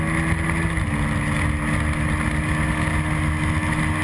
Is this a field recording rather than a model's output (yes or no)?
yes